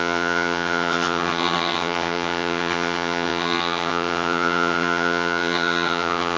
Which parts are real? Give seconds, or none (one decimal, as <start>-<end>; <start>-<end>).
none